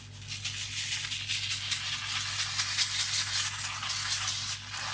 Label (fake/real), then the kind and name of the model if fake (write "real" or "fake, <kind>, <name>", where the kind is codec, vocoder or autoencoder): real